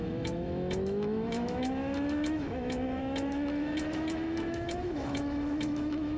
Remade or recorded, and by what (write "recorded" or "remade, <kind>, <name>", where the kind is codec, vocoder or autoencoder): remade, autoencoder, DAC-VAE